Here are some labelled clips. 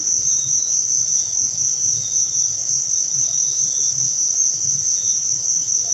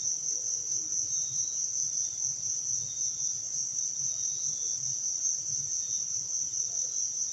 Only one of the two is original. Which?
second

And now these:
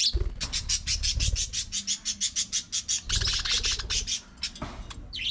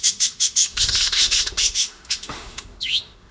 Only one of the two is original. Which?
first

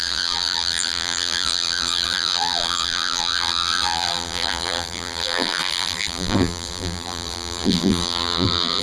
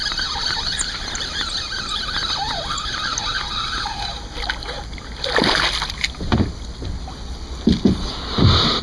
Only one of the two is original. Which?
second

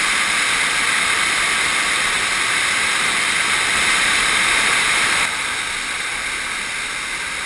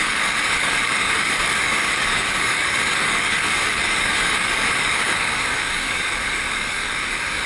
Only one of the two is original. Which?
first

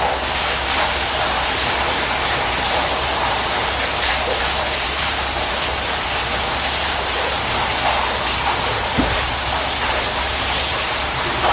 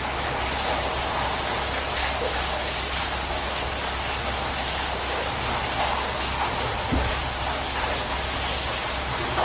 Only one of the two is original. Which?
second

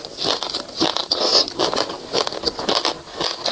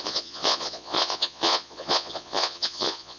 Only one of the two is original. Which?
first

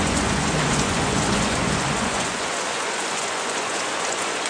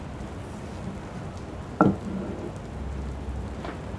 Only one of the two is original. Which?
second